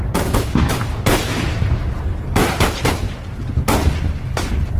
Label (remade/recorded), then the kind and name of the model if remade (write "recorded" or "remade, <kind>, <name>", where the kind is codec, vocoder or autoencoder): recorded